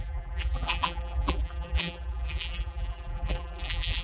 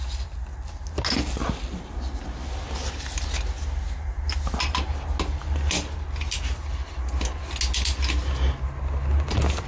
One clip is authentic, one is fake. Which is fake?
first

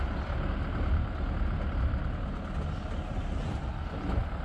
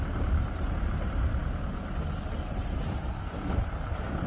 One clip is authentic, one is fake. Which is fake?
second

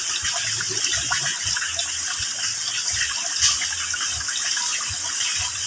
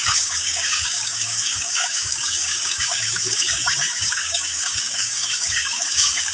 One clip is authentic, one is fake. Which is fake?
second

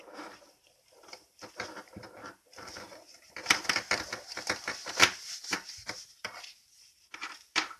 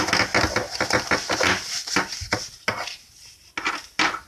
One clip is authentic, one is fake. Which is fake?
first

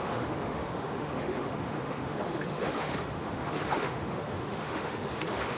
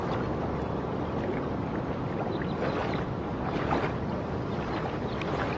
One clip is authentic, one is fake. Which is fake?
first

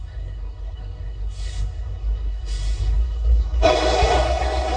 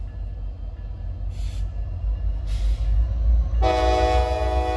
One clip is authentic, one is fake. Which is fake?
first